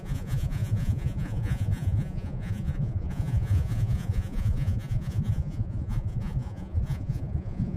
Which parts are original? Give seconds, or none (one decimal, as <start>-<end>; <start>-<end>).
none